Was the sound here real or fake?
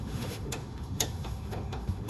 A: fake